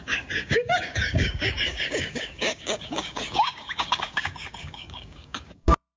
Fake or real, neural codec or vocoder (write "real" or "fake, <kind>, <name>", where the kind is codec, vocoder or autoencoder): fake, codec, DAC